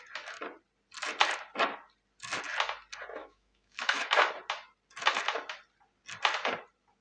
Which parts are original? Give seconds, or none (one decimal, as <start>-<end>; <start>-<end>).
0.0-3.2; 4.3-7.0